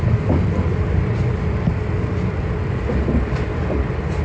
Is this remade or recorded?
recorded